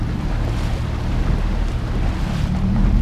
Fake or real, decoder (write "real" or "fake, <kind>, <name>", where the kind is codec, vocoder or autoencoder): real